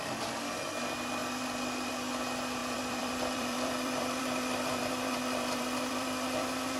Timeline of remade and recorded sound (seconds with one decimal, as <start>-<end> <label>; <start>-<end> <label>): 0.0-1.2 recorded; 1.2-1.9 remade; 1.9-2.6 recorded; 2.6-6.8 remade